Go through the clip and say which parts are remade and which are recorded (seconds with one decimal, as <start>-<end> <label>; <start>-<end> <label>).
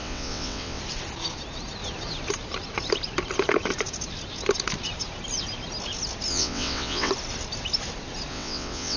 0.0-0.8 remade; 0.8-6.3 recorded; 6.3-7.1 remade; 7.1-8.3 recorded; 8.3-9.0 remade